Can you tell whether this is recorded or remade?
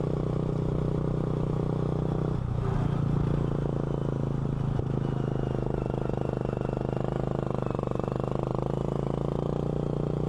recorded